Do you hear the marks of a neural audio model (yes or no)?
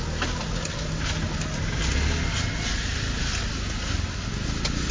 no